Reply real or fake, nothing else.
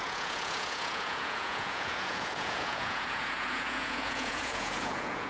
fake